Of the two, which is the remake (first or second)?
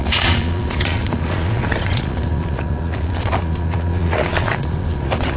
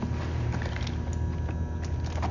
first